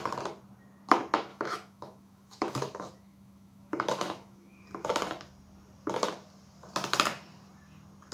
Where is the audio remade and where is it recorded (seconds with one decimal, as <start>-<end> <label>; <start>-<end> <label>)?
0.0-1.3 recorded; 1.3-4.6 remade; 4.6-8.1 recorded